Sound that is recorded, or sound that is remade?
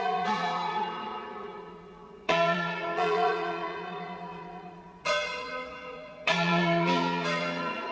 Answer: remade